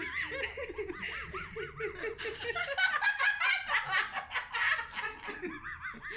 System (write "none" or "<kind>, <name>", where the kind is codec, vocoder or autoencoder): none